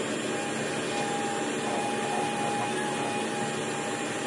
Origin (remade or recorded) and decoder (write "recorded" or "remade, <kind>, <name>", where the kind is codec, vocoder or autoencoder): recorded